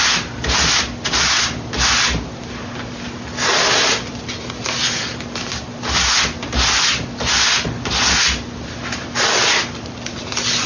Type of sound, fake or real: real